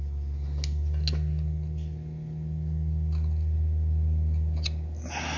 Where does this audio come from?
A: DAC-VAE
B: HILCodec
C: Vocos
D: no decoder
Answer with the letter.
D